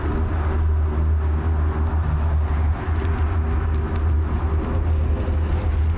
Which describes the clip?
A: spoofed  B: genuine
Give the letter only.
B